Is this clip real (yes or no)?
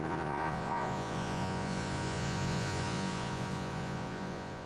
no